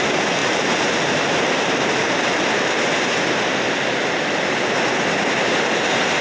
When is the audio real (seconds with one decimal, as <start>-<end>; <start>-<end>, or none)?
0.0-0.4; 2.8-6.2